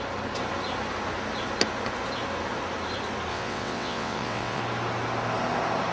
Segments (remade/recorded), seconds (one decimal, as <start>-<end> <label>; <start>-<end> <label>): 0.0-3.3 recorded; 3.3-4.6 remade; 4.6-5.9 recorded